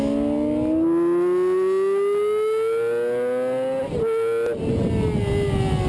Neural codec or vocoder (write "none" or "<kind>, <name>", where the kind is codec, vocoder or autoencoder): none